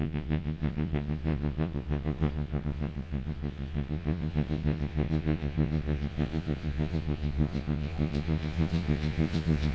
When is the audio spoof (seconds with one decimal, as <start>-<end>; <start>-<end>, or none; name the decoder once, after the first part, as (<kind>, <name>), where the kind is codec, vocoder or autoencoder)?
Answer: 0.0-9.7 (vocoder, Vocos)